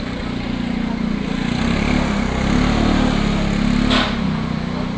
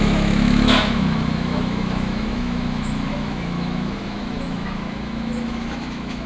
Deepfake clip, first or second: second